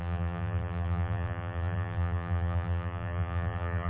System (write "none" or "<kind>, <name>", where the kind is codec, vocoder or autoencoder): vocoder, BigVGAN v2